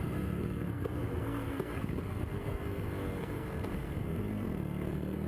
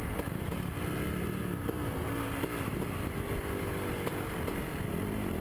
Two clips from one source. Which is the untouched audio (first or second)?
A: second